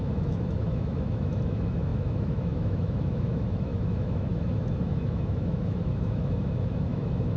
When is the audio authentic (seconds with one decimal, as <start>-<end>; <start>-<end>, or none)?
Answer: none